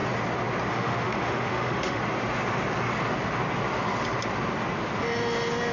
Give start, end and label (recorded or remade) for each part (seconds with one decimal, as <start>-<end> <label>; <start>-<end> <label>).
0.0-0.7 recorded; 0.7-2.0 remade; 2.0-5.7 recorded